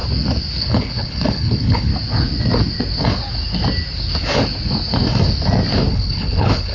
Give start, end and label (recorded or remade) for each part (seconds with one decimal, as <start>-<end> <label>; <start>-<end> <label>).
0.0-0.6 recorded; 0.6-1.9 remade; 1.9-5.9 recorded; 5.9-6.7 remade